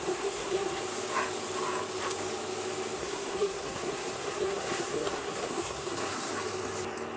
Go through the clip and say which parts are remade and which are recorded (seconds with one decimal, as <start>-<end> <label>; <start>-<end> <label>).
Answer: 0.0-0.8 remade; 0.8-3.0 recorded; 3.0-6.3 remade; 6.3-7.2 recorded